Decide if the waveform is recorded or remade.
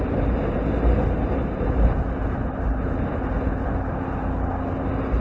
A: recorded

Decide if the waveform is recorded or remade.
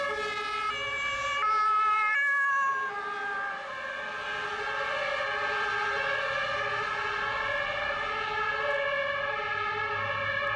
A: recorded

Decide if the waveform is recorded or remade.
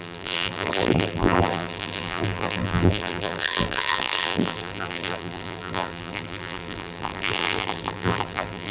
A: remade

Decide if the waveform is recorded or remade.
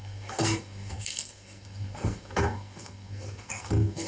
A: remade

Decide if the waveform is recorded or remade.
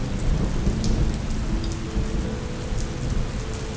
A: recorded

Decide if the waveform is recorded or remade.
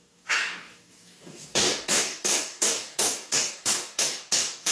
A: remade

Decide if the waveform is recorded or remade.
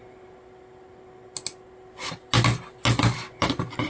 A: recorded